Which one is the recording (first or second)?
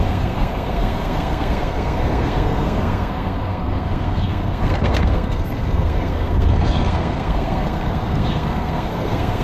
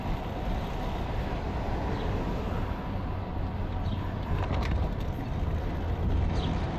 second